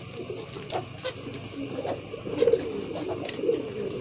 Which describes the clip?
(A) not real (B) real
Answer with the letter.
B